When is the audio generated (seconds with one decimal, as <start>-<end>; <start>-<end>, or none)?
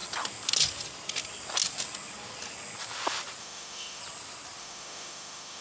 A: 3.4-4.0; 4.6-5.6